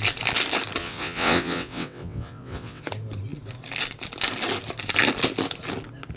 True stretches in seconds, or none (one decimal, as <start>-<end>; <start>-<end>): 0.0-0.8; 2.8-6.2